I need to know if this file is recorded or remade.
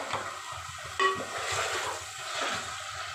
recorded